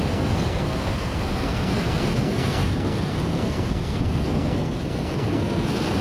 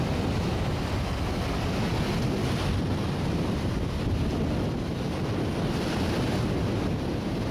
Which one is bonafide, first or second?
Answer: second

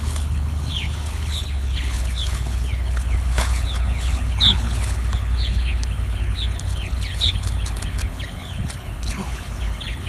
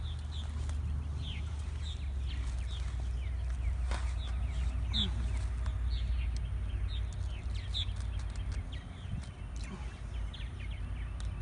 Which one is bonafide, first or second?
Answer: second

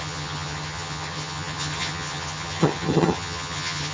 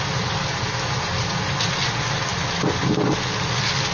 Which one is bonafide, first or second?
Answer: second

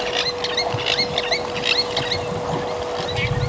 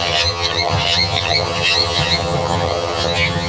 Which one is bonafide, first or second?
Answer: first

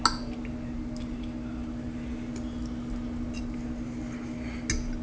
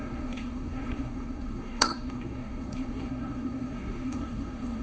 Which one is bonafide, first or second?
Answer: first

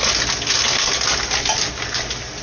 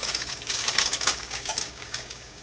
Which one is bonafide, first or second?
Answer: first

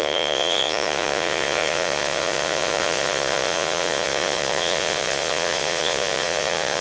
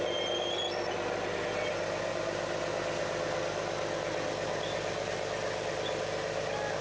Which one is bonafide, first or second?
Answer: second